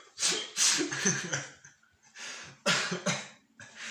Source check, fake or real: real